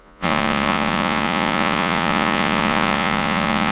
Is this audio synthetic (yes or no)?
yes